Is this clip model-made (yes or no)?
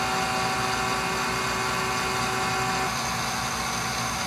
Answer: no